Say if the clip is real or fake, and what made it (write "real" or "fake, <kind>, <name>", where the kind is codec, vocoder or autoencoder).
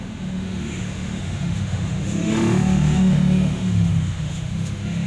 fake, autoencoder, DAC-VAE